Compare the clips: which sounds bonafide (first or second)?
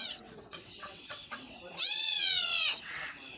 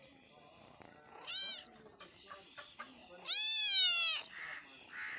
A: second